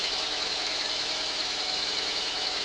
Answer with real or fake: fake